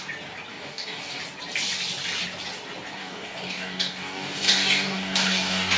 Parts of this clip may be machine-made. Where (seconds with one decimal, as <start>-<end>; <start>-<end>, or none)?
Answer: 0.5-1.2; 3.0-5.8